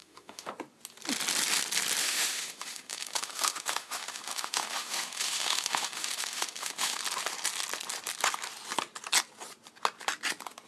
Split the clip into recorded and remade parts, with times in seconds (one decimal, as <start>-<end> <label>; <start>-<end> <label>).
0.0-0.5 remade; 0.5-2.0 recorded; 2.0-7.0 remade; 7.0-10.7 recorded